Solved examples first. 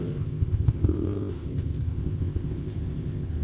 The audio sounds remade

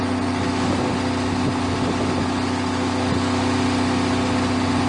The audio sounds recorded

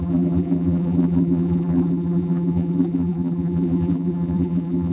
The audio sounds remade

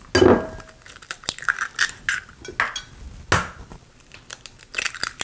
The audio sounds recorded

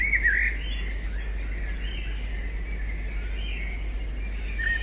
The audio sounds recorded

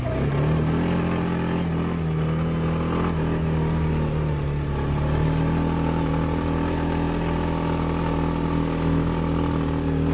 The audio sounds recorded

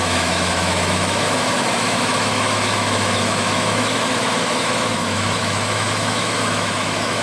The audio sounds remade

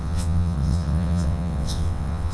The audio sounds remade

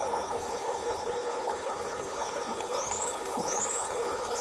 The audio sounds remade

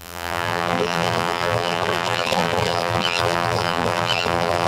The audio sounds remade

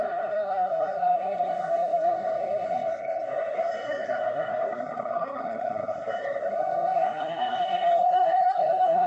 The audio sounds remade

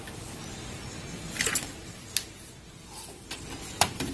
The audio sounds remade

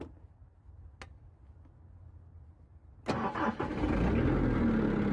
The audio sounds recorded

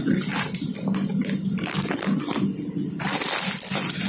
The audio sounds recorded